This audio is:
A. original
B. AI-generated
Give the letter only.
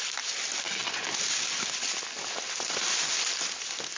A